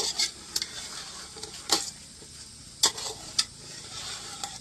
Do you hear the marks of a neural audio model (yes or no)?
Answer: no